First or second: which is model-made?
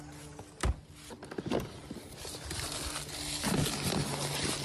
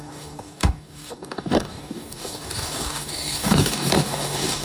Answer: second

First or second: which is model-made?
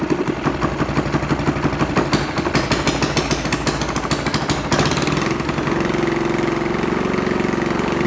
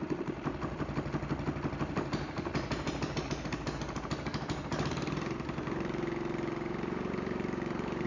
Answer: second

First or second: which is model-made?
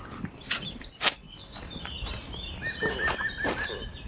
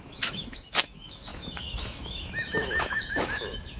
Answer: second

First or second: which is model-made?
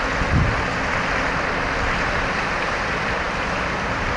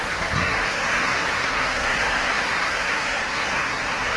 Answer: second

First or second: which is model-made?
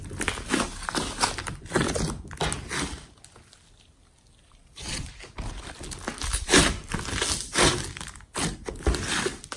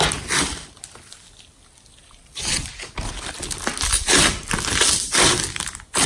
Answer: second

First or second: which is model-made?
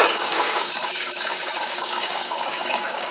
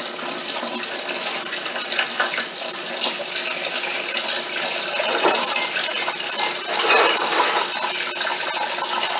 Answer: first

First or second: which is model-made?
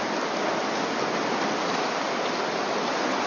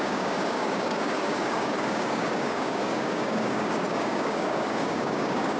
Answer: second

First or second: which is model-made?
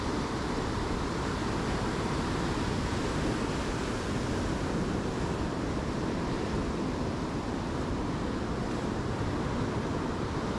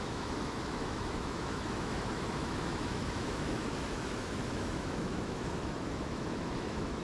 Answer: second